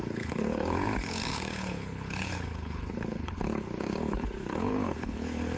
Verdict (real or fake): fake